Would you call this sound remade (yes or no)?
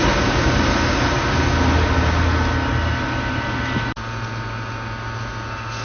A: no